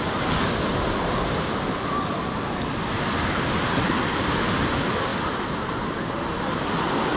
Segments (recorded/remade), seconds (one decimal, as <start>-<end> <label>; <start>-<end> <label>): 0.0-7.2 recorded